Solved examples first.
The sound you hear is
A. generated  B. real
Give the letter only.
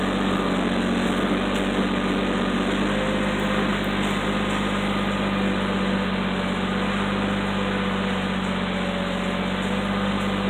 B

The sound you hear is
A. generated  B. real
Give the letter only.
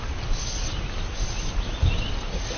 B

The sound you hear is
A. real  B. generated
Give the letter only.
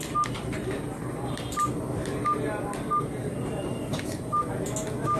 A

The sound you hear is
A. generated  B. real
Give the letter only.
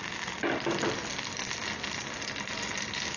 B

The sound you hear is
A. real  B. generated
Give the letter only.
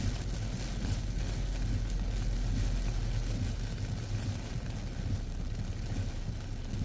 A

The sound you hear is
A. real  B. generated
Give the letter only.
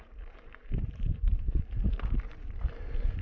B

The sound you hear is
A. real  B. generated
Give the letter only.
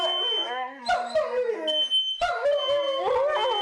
A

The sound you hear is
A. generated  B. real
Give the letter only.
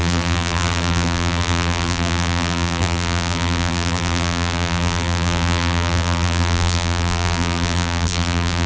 A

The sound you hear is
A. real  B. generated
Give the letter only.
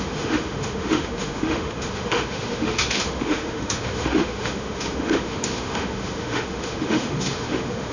B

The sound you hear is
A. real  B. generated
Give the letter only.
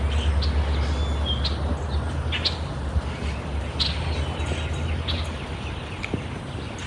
A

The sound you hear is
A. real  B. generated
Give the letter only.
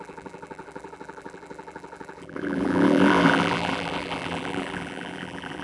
B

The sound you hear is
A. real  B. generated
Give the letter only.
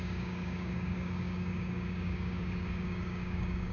B